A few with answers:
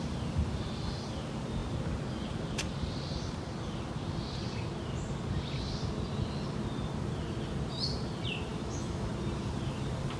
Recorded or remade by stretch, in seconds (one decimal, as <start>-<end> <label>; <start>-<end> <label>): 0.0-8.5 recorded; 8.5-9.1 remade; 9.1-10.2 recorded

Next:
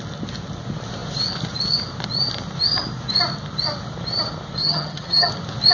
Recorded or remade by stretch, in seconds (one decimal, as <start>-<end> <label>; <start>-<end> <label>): 0.0-4.6 recorded; 4.6-5.3 remade; 5.3-5.7 recorded

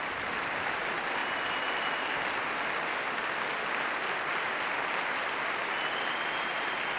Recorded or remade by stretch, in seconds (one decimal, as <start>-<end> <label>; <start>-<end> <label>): 0.0-7.0 recorded

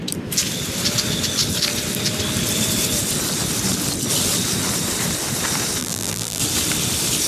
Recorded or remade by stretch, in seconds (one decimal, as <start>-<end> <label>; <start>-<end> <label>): 0.0-5.8 recorded; 5.8-6.4 remade; 6.4-7.3 recorded

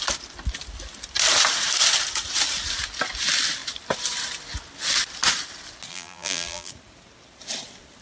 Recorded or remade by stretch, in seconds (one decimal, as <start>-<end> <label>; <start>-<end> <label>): 0.0-5.9 recorded; 5.9-6.7 remade; 6.7-8.0 recorded